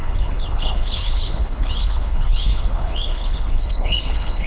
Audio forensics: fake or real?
fake